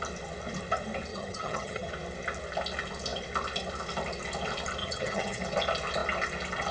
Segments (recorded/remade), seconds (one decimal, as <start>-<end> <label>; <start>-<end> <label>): 0.0-1.1 recorded; 1.1-1.9 remade; 1.9-4.8 recorded; 4.8-5.4 remade; 5.4-6.7 recorded